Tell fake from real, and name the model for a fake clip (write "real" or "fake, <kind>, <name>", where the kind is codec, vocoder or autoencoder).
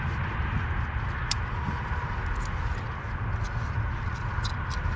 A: real